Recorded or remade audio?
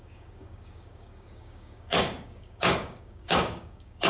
remade